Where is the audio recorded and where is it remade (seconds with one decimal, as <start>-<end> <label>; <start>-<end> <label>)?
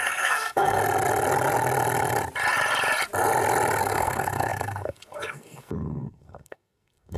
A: 0.0-0.8 remade; 0.8-3.8 recorded; 3.8-7.2 remade